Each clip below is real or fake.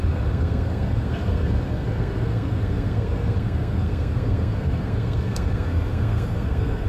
fake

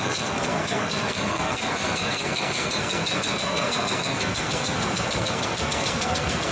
fake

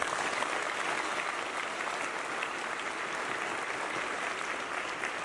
real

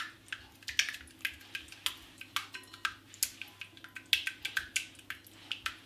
real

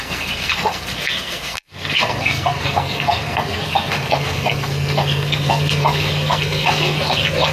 fake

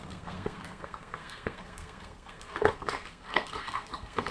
fake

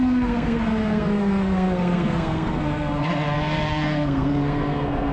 fake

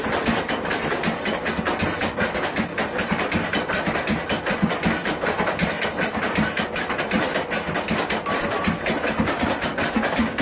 real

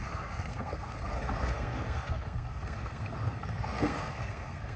fake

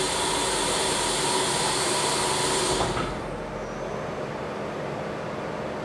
real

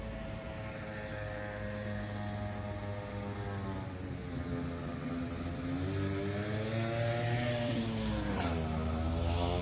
real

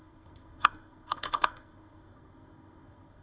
fake